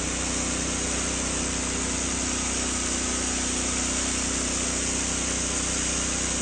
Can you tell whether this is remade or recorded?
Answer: recorded